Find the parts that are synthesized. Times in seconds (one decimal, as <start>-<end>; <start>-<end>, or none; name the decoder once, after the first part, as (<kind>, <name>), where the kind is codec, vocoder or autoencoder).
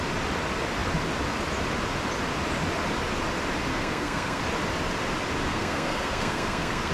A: 3.7-4.4 (codec, SNAC); 5.5-6.9